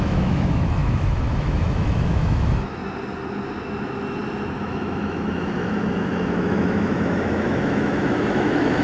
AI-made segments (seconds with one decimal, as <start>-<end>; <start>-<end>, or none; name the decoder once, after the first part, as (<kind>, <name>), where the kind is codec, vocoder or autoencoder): 0.0-2.8 (autoencoder, DAC-VAE); 4.6-8.8